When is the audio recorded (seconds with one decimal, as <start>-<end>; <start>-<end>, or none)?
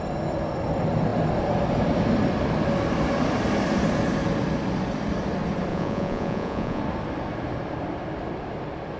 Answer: 0.0-5.7; 6.8-9.0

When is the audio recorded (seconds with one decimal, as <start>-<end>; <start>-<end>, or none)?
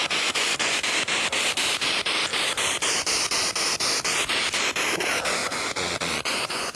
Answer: 0.8-5.4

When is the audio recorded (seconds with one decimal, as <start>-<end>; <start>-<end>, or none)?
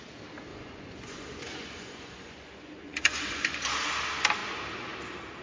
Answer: 0.0-0.5; 3.7-5.4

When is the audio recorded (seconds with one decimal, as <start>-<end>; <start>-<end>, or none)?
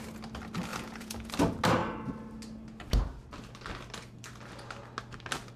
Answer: 0.0-0.7; 1.3-5.6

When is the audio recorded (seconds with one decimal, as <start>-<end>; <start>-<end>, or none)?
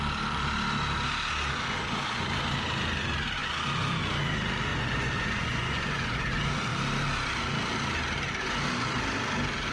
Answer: 0.0-4.7; 6.3-9.7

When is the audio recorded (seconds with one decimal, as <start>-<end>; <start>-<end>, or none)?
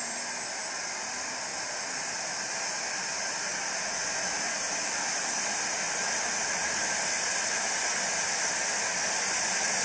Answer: 0.0-9.8